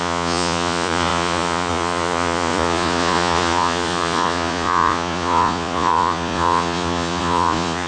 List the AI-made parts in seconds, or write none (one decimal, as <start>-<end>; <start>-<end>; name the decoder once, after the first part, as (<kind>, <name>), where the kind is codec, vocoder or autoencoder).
0.0-7.9 (vocoder, Vocos)